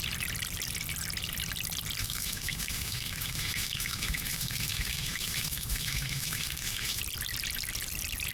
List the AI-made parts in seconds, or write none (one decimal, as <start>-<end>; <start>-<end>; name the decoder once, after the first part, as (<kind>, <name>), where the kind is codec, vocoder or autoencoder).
2.0-7.0 (autoencoder, DAC-VAE)